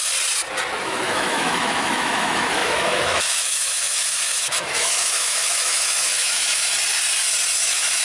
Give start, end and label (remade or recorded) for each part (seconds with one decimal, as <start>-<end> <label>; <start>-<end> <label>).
0.0-0.8 recorded; 0.8-6.7 remade; 6.7-7.6 recorded; 7.6-8.0 remade